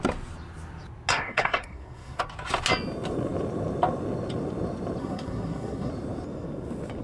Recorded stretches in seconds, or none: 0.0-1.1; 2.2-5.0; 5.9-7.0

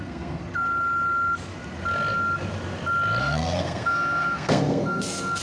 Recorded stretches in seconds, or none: 0.4-3.2

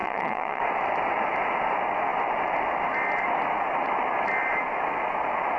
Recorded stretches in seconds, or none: 0.6-5.6

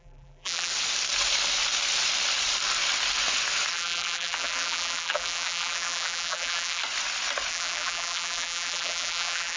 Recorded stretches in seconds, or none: 0.7-3.7; 6.8-7.5

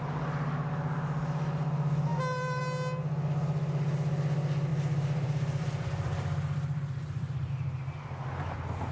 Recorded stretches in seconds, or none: 0.0-2.1; 2.6-4.7; 7.5-8.9